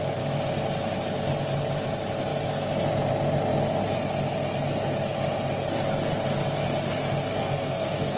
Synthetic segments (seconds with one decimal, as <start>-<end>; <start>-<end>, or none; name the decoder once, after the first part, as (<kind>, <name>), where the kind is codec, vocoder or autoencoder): 7.3-8.2 (codec, SNAC)